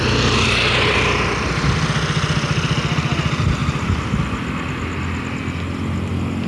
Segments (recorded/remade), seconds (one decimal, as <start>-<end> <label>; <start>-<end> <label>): 0.0-6.5 recorded